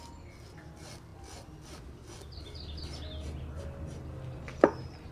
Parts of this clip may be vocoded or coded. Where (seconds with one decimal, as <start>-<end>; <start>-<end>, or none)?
none